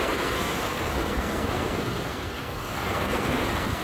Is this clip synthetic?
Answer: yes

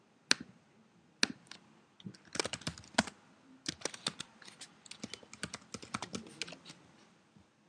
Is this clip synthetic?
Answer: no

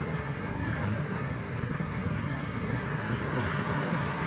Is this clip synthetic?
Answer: yes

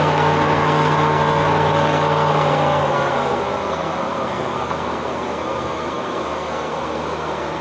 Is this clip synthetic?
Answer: yes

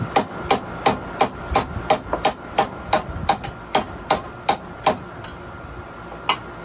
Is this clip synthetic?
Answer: no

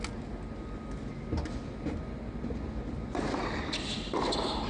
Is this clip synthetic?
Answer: no